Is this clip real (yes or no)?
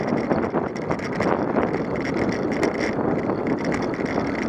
yes